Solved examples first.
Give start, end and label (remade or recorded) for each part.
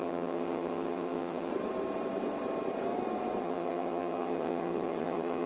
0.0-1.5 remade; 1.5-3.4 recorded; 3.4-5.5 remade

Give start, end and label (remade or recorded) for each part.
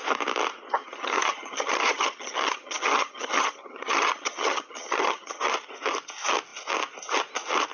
0.0-0.8 recorded; 0.8-5.4 remade; 5.4-7.7 recorded